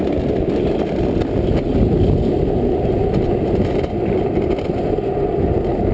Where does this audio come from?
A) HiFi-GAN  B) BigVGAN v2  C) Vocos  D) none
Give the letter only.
D